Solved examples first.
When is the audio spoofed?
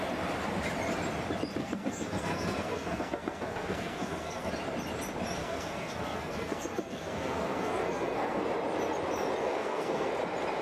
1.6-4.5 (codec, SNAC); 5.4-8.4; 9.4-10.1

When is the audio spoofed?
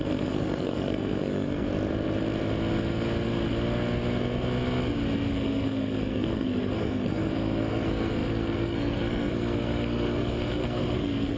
0.0-1.7 (codec, SNAC); 5.3-11.4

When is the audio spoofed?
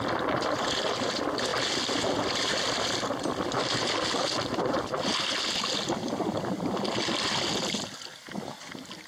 none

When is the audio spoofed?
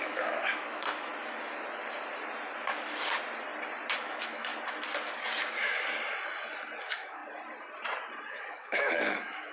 0.0-1.1 (autoencoder, DAC-VAE); 4.0-4.5; 6.8-7.2; 8.3-9.5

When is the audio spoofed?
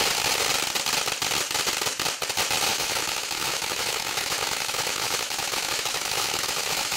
2.7-7.0 (autoencoder, DAC-VAE)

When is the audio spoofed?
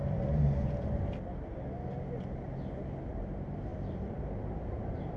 3.1-5.2 (vocoder, BigVGAN v2)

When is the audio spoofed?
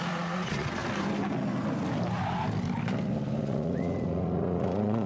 0.0-0.8 (vocoder, Vocos); 3.4-5.1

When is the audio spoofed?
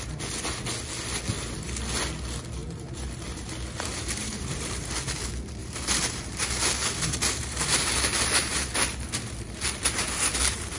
2.6-3.5 (vocoder, BigVGAN v2); 3.9-4.9; 5.6-10.8